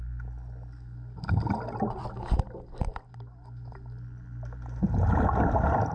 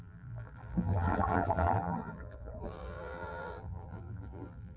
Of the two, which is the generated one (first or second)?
second